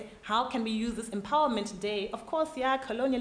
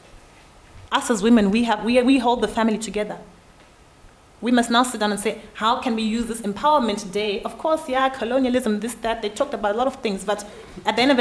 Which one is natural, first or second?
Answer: first